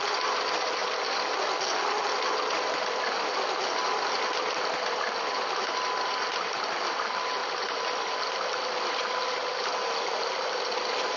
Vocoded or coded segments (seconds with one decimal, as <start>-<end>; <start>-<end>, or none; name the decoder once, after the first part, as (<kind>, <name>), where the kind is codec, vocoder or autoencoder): none